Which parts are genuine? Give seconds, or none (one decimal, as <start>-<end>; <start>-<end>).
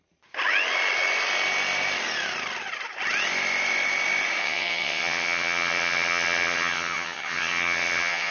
0.0-4.4